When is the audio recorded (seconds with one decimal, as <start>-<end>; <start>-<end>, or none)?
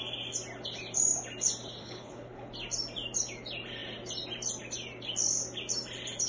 0.0-1.8; 2.5-6.3